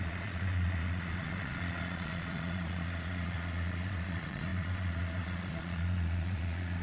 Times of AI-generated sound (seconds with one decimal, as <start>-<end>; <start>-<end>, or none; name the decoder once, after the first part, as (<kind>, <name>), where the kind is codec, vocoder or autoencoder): 0.0-6.8 (vocoder, Vocos)